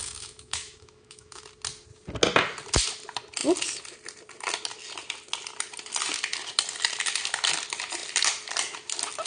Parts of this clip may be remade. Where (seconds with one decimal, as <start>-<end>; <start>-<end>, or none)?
0.0-1.4

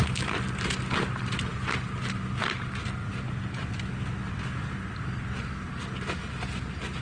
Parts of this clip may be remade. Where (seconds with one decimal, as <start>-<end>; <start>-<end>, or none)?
none

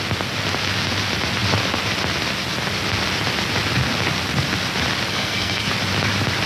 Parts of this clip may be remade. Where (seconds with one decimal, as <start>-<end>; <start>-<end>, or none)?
5.1-5.7

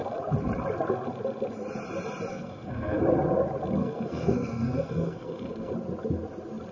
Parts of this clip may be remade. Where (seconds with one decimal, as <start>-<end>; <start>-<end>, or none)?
2.3-3.0; 3.8-5.7

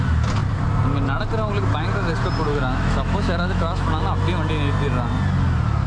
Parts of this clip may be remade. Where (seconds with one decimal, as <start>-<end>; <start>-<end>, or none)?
2.5-4.0